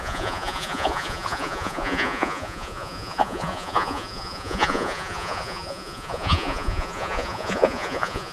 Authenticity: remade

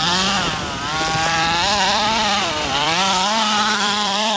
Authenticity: remade